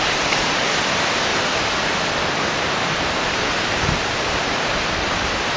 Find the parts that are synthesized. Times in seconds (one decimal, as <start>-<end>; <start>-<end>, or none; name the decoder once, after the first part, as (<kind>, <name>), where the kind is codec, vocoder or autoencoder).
0.0-5.6 (vocoder, BigVGAN v2)

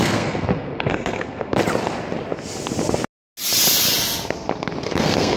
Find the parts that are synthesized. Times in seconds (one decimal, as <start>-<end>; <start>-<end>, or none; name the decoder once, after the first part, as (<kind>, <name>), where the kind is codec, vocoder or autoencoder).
0.0-1.6 (codec, SNAC); 4.8-5.4

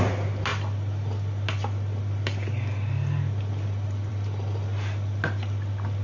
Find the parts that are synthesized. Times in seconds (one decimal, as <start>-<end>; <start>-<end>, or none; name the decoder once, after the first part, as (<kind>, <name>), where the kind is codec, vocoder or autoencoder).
none

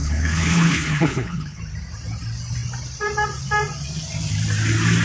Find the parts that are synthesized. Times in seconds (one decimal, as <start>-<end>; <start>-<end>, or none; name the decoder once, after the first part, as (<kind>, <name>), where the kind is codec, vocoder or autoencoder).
0.0-1.6 (codec, HILCodec)

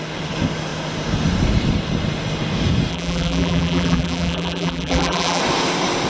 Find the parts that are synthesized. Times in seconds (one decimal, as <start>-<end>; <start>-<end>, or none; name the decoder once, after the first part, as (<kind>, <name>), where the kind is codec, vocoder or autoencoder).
2.9-5.4 (vocoder, BigVGAN v2)

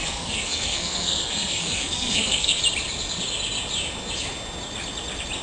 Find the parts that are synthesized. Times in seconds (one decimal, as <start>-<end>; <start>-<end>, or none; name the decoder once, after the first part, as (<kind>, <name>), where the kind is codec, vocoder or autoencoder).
0.0-2.6 (codec, SNAC)

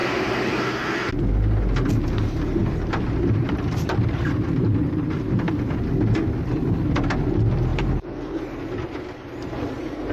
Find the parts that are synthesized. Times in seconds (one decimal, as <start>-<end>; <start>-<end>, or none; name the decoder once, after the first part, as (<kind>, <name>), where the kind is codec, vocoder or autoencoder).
2.6-5.2 (vocoder, BigVGAN v2); 7.7-10.1

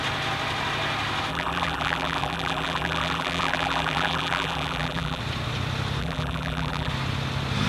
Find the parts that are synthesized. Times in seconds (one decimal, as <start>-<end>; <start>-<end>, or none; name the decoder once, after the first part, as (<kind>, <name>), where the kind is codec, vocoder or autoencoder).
1.3-5.2 (vocoder, BigVGAN v2); 6.0-6.9